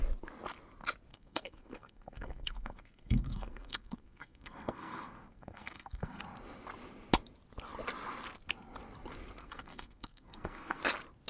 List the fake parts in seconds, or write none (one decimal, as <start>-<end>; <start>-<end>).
1.1-6.2; 9.4-10.8